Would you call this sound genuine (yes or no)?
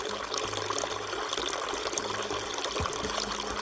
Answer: yes